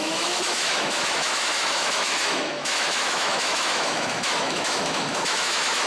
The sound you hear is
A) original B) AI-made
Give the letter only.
B